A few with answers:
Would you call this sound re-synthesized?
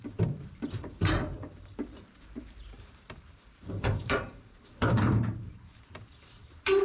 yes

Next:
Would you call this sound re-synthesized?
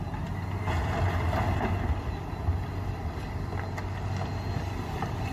no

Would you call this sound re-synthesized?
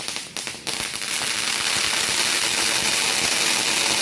no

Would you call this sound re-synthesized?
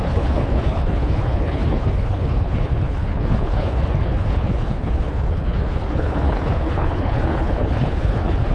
yes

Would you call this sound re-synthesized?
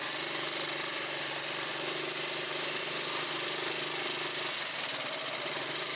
no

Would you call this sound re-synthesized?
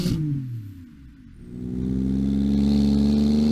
no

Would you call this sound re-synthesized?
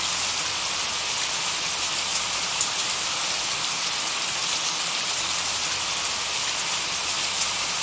no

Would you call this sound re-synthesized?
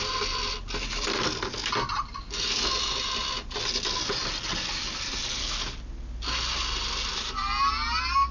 no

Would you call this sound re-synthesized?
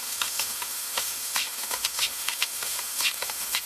yes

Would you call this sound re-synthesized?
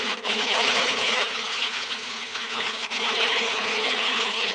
yes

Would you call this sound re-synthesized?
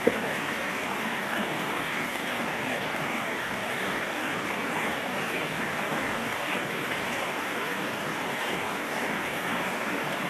yes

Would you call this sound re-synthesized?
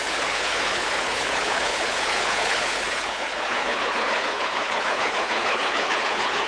yes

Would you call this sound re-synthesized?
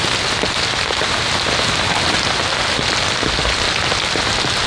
no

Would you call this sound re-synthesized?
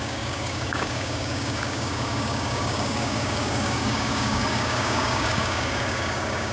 yes